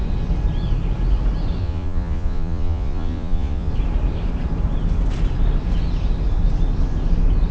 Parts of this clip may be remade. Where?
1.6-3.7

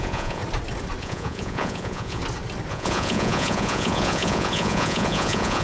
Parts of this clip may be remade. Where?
0.0-0.4; 1.0-2.2; 2.7-5.6

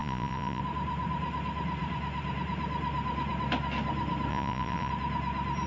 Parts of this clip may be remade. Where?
0.0-0.6; 4.3-4.9

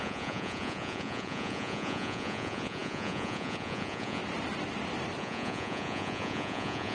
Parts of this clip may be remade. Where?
0.0-4.2; 5.2-6.9